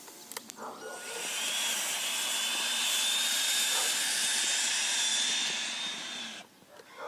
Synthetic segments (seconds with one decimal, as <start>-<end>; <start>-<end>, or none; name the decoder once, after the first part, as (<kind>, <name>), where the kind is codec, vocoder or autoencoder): 0.9-3.7 (vocoder, BigVGAN v2)